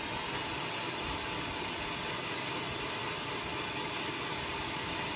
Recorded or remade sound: recorded